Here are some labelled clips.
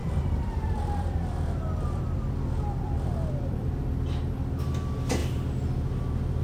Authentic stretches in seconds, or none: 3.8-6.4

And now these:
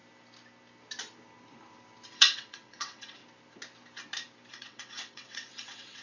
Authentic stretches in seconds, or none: 0.0-2.1; 3.2-4.5

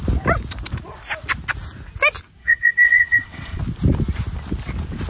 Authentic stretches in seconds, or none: 0.0-2.4; 3.6-5.1

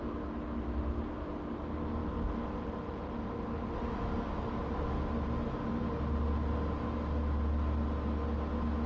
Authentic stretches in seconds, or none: 0.0-8.9

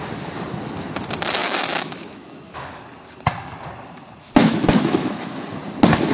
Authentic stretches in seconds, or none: 0.0-1.4; 2.8-4.4; 5.6-6.1

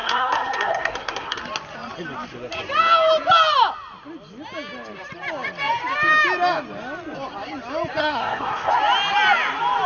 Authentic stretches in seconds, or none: 1.4-8.0; 8.7-9.9